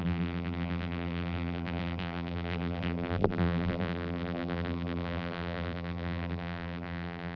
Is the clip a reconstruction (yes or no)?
yes